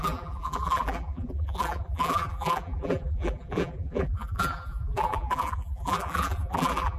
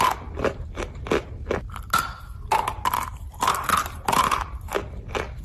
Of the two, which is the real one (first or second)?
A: second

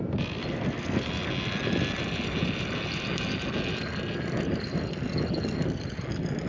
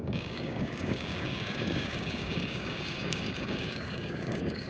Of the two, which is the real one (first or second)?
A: first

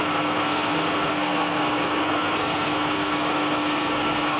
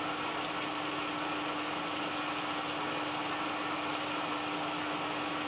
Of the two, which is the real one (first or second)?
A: second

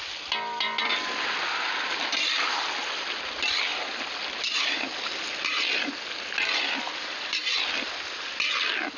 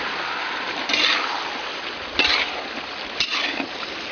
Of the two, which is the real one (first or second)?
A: first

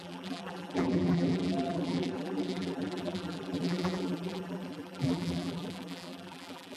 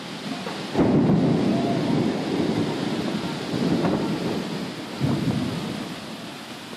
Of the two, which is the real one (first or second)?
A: second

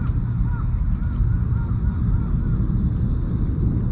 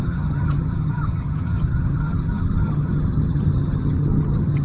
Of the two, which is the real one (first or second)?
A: first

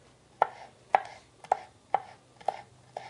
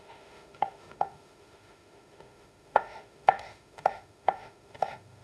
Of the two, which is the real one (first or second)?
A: first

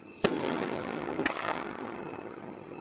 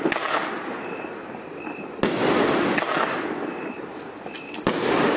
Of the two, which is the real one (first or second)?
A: second